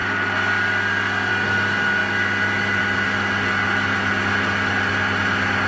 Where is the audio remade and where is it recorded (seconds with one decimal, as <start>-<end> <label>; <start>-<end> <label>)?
0.0-5.7 recorded